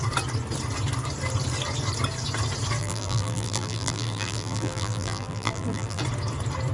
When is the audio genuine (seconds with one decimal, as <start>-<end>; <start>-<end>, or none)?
0.0-2.8; 6.0-6.7